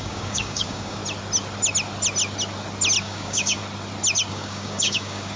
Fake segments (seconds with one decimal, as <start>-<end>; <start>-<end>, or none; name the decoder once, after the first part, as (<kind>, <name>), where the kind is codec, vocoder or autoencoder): 0.0-1.0 (codec, DAC); 3.0-3.6; 4.3-5.4